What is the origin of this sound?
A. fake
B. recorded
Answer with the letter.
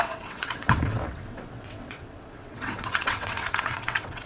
A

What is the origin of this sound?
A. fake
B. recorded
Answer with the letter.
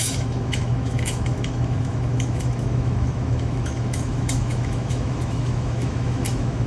A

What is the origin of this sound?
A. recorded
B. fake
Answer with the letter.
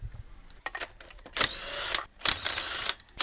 A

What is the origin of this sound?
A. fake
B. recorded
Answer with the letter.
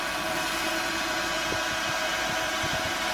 A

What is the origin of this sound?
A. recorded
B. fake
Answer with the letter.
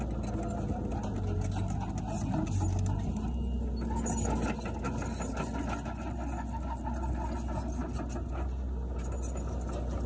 A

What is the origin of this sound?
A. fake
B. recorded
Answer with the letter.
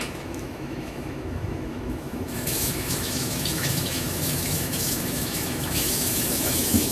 A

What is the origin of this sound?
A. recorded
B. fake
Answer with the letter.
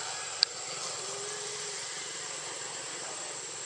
A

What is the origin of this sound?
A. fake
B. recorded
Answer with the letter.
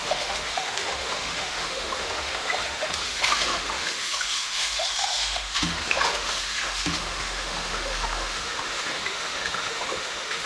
A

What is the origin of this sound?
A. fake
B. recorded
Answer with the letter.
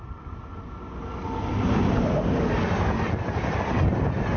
B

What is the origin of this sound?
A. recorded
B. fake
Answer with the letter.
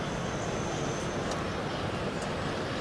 A